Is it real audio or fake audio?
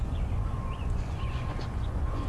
fake